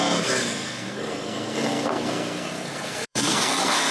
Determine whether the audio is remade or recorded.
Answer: remade